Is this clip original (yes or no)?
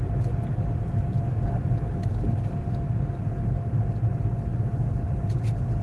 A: yes